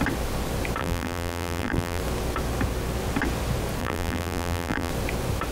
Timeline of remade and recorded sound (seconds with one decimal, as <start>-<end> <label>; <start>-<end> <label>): 0.0-0.8 recorded; 0.8-2.0 remade; 2.0-3.8 recorded; 3.8-4.9 remade; 4.9-5.5 recorded